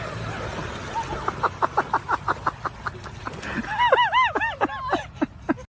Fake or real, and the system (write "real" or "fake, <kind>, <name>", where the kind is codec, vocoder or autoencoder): real